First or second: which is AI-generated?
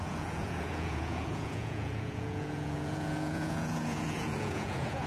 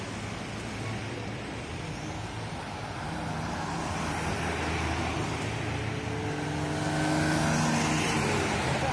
first